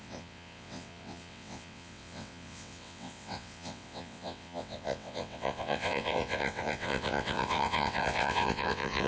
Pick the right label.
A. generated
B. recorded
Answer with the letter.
A